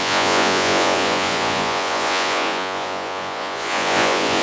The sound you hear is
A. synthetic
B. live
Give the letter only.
A